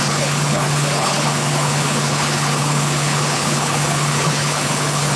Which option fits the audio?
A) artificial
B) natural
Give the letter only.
A